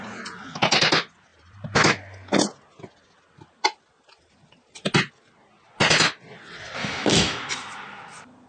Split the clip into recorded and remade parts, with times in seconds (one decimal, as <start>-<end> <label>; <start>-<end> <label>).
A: 0.0-6.8 recorded; 6.8-7.5 remade; 7.5-8.5 recorded